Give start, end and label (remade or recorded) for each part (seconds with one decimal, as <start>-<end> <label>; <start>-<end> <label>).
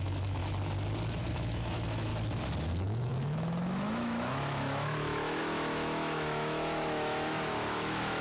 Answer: 0.0-0.4 remade; 0.4-1.3 recorded; 1.3-2.1 remade; 2.1-2.7 recorded; 2.7-8.2 remade